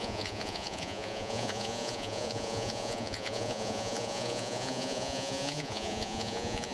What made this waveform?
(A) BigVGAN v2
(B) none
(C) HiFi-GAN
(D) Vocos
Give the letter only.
D